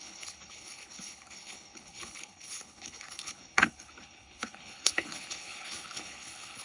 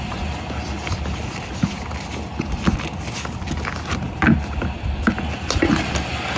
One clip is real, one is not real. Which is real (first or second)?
second